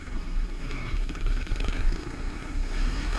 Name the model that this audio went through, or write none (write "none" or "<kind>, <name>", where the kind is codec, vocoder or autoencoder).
codec, SNAC